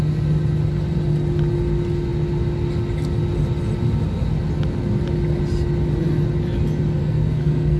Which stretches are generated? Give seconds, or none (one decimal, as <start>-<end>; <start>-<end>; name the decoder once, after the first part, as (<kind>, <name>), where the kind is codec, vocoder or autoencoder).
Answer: 7.0-7.8 (codec, SNAC)